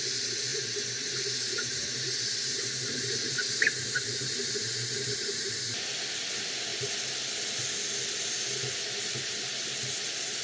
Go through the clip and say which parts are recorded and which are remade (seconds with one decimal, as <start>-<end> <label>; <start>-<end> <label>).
0.0-0.5 recorded; 0.5-5.5 remade; 5.5-8.6 recorded; 8.6-9.5 remade; 9.5-10.4 recorded